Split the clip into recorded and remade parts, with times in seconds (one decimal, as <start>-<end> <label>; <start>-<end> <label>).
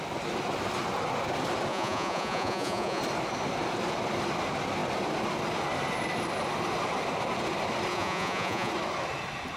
0.0-1.7 recorded; 1.7-3.0 remade; 3.0-7.9 recorded; 7.9-8.7 remade; 8.7-9.6 recorded